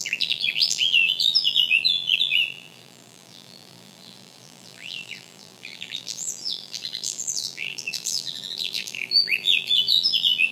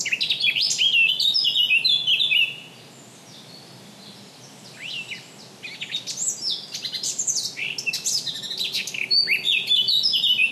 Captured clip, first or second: second